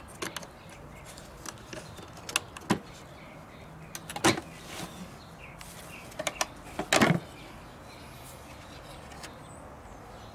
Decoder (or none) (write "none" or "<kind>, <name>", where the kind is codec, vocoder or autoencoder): none